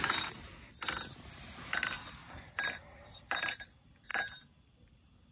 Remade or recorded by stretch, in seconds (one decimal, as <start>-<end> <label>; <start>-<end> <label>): 0.0-2.2 recorded; 2.2-3.4 remade; 3.4-4.1 recorded; 4.1-4.6 remade; 4.6-5.3 recorded